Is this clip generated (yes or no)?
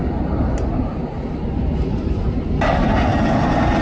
no